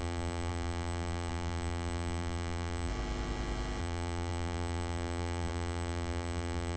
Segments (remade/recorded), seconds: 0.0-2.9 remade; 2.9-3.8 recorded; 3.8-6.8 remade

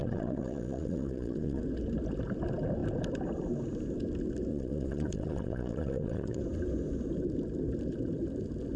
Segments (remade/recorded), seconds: 0.0-1.6 remade; 1.6-4.5 recorded; 4.5-6.4 remade; 6.4-8.8 recorded

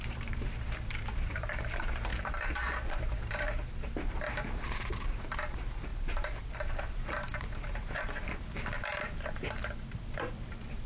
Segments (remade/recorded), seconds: 0.0-10.9 remade

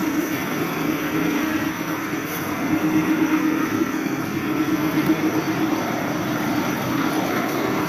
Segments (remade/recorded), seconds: 0.0-5.2 remade; 5.2-7.3 recorded; 7.3-7.9 remade